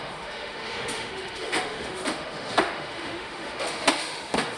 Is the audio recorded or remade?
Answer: remade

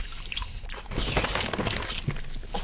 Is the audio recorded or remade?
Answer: recorded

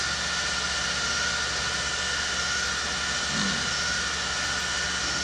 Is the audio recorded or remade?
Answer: recorded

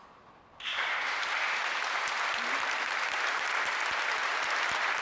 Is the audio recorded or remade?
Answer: recorded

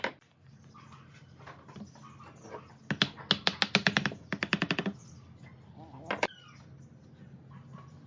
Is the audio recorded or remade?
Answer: recorded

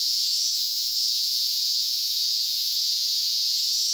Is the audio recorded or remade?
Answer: remade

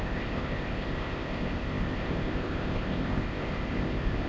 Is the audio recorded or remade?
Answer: remade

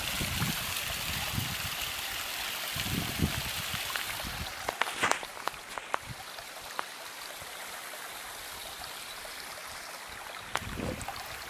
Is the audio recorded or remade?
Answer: recorded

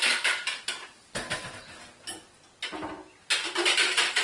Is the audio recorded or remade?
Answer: recorded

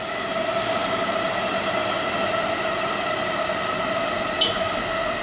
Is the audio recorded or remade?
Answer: recorded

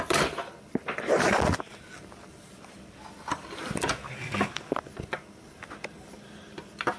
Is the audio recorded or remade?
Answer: recorded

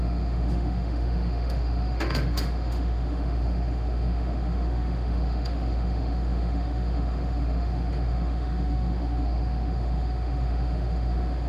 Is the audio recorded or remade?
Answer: remade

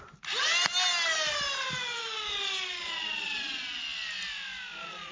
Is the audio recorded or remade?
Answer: recorded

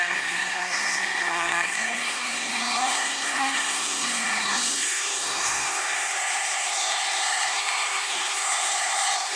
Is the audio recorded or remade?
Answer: remade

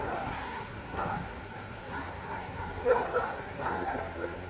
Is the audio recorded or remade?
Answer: remade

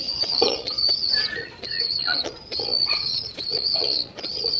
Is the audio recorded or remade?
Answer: remade